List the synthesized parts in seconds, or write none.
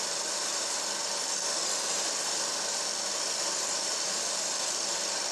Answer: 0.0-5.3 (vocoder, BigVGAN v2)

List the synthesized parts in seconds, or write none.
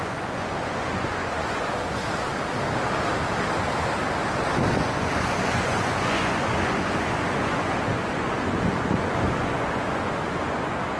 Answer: 0.0-2.0 (vocoder, Vocos); 4.7-11.0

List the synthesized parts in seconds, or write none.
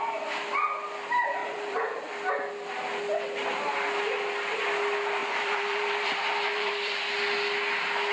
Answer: 1.4-2.1 (vocoder, BigVGAN v2); 5.2-7.0